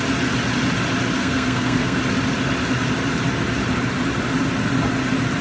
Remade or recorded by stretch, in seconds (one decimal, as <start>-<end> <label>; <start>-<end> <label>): 0.0-1.2 recorded; 1.2-2.0 remade; 2.0-5.4 recorded